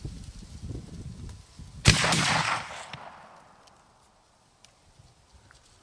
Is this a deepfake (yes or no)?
no